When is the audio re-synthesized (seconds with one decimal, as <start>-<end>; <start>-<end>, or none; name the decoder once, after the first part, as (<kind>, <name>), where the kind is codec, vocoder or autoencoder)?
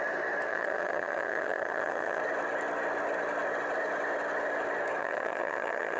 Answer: 0.5-2.2 (vocoder, HiFi-GAN); 5.0-6.0